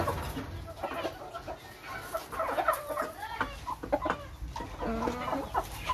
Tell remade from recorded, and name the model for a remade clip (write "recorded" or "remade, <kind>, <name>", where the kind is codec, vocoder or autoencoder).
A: recorded